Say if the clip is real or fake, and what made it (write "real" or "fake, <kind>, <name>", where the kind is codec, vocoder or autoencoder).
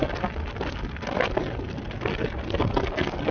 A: real